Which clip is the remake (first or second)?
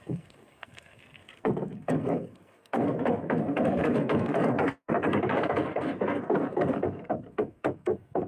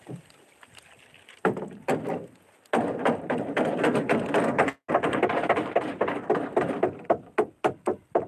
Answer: first